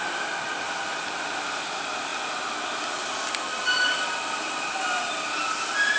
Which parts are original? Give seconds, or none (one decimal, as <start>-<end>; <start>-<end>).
0.0-6.0